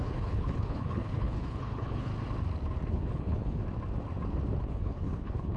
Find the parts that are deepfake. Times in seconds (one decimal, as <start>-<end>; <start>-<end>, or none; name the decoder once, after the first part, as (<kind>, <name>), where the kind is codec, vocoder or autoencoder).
0.0-2.1 (codec, HILCodec); 2.9-3.6; 4.6-5.6